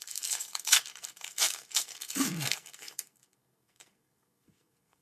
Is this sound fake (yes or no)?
yes